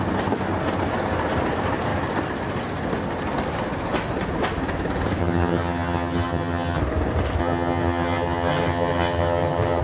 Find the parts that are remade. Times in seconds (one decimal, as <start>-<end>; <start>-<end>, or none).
5.2-6.8; 7.4-9.8